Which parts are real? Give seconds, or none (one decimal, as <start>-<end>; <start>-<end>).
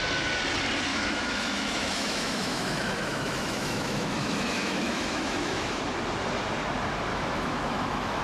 0.0-0.9; 5.8-7.1